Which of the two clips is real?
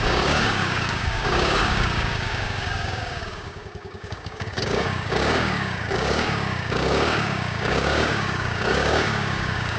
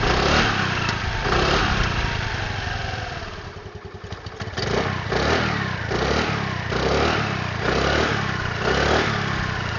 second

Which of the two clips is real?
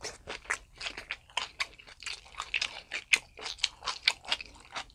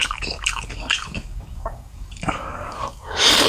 first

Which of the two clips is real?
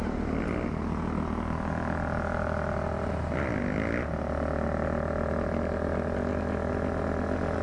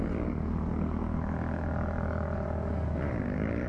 first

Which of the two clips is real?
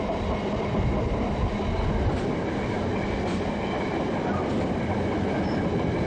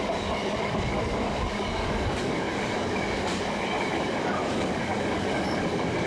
first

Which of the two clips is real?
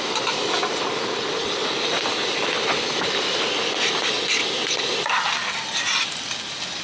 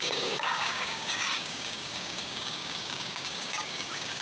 first